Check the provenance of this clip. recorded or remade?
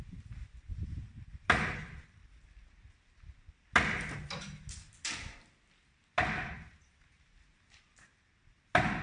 recorded